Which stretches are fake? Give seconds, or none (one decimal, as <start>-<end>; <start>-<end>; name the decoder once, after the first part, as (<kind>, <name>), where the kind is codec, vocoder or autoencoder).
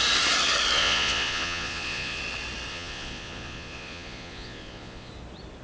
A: 0.8-2.2 (vocoder, Vocos); 2.7-5.1